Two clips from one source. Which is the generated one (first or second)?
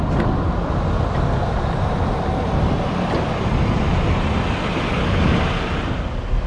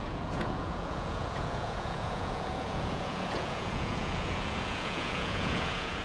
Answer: second